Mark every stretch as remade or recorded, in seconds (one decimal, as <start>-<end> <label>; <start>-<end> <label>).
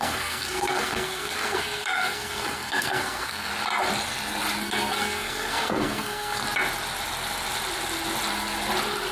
0.0-3.5 remade; 3.5-4.6 recorded; 4.6-6.4 remade; 6.4-9.1 recorded